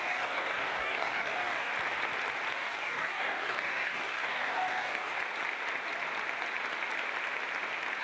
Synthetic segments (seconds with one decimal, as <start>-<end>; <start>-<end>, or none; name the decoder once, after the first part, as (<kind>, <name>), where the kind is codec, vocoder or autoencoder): 0.0-1.7 (codec, DAC); 2.5-5.2